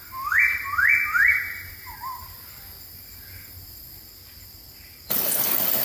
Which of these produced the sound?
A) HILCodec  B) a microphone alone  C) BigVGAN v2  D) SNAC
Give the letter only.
B